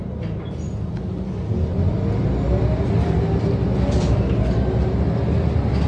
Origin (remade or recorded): recorded